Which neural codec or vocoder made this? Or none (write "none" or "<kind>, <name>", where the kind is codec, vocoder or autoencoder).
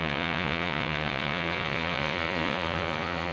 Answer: vocoder, Vocos